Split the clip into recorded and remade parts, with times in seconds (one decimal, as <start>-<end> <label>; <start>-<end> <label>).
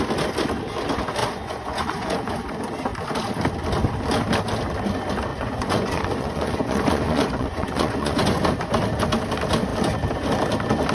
0.0-1.2 recorded; 1.2-2.5 remade; 2.5-5.3 recorded; 5.3-8.4 remade; 8.4-10.9 recorded